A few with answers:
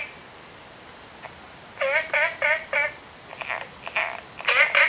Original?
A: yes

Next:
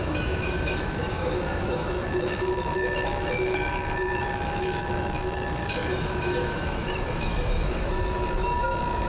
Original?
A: no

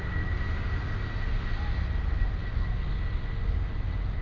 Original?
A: yes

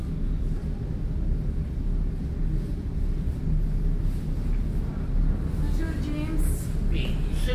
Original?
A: yes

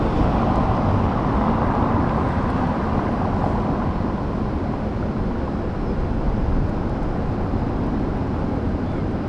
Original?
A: yes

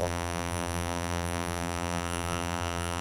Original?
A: no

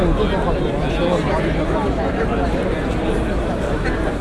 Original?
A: yes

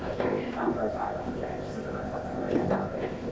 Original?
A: no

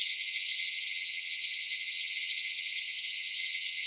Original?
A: no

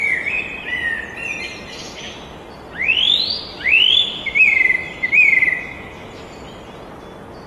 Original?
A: yes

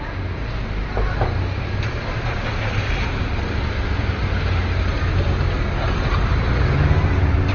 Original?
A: yes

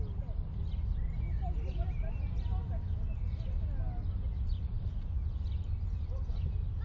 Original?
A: yes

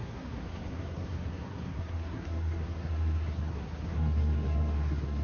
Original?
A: no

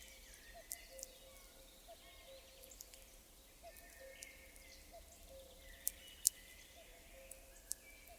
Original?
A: yes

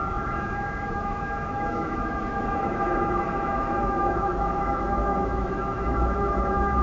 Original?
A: no